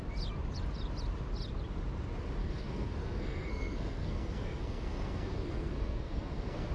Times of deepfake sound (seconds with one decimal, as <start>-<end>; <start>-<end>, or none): 2.4-6.7